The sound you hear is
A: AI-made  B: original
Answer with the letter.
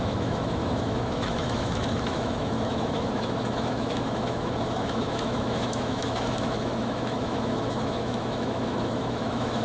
A